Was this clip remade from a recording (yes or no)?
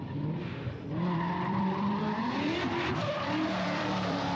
yes